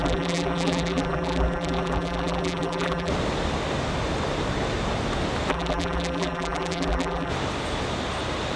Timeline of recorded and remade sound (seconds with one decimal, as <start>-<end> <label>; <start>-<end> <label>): 0.0-3.1 remade; 3.1-5.5 recorded; 5.5-7.3 remade; 7.3-8.6 recorded